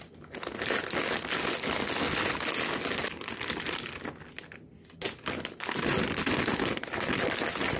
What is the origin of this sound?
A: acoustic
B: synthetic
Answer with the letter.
A